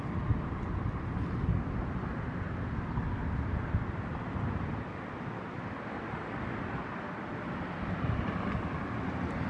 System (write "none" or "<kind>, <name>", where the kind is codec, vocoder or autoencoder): none